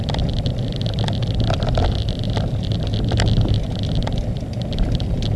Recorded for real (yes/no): yes